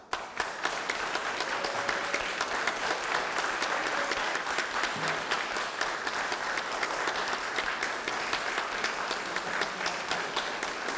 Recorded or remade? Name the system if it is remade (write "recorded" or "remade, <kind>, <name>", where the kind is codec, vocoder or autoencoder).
recorded